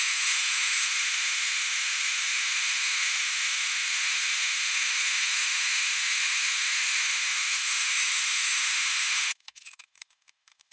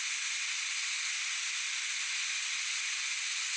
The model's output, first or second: first